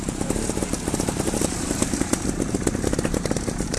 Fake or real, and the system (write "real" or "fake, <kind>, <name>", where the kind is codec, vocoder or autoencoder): fake, vocoder, BigVGAN v2